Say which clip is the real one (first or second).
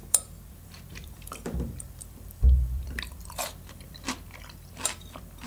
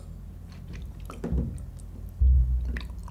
second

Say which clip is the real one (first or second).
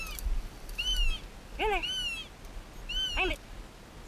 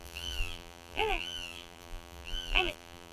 first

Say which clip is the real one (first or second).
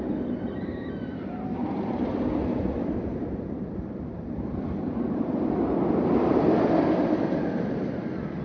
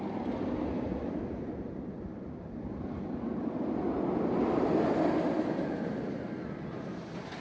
second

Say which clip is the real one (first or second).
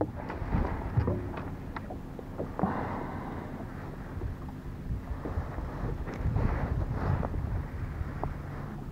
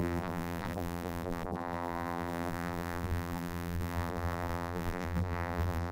first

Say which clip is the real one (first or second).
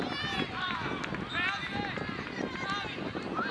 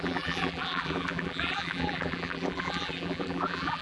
first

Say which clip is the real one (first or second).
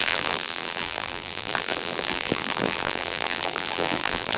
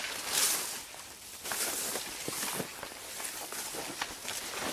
second